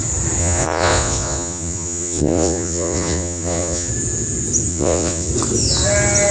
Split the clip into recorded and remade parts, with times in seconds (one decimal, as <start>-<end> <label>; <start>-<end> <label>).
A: 0.0-0.4 recorded; 0.4-3.9 remade; 3.9-4.7 recorded; 4.7-5.3 remade; 5.3-6.3 recorded